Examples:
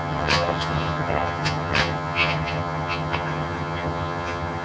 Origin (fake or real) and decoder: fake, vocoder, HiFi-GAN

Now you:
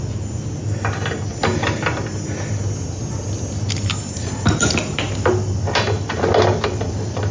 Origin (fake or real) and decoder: real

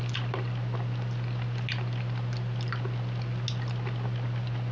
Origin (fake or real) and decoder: real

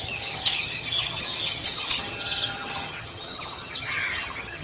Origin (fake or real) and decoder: fake, vocoder, HiFi-GAN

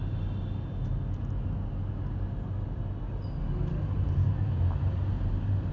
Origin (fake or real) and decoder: real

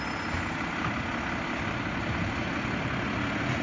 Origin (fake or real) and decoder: real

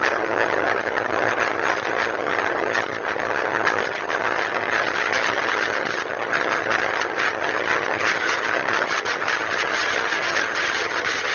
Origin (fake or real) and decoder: fake, vocoder, HiFi-GAN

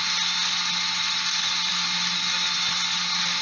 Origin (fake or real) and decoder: real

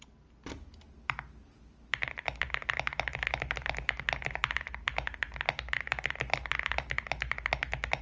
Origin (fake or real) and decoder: real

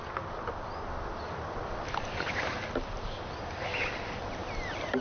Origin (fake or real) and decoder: real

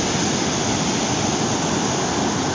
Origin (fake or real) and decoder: real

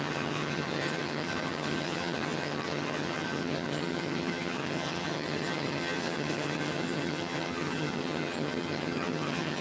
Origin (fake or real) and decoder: fake, vocoder, HiFi-GAN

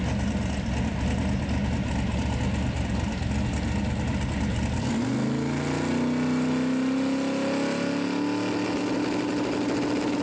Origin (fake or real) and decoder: real